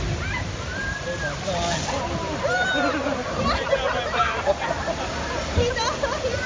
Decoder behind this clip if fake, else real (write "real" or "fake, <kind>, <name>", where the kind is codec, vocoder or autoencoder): real